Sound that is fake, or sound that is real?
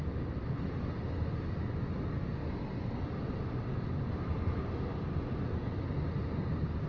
real